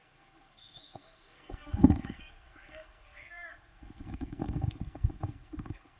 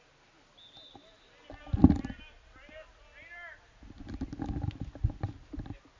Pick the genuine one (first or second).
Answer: second